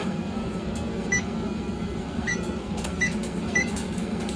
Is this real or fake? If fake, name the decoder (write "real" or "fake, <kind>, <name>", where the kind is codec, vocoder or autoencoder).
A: fake, codec, SNAC